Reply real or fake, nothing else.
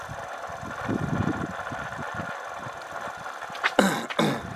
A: real